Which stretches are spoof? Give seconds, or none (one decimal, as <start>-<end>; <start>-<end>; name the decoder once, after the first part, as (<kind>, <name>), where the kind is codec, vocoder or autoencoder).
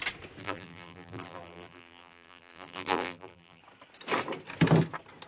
0.4-3.6 (vocoder, BigVGAN v2)